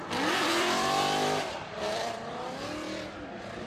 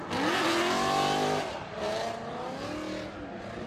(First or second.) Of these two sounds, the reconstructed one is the first